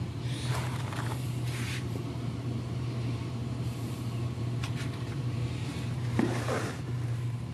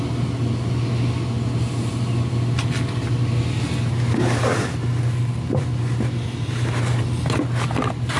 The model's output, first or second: first